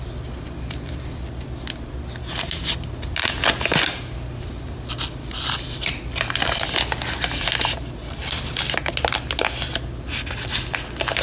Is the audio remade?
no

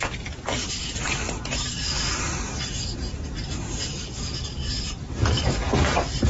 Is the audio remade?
no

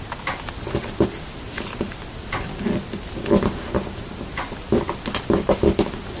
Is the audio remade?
no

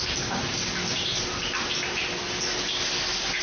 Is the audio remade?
no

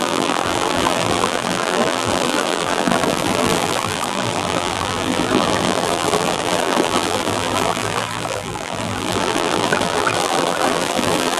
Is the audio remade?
yes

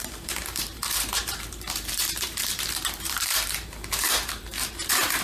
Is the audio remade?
yes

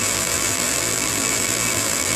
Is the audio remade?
yes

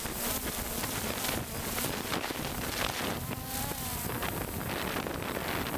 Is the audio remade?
yes